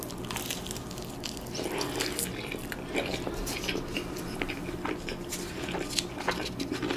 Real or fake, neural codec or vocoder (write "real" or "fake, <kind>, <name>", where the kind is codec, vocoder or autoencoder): real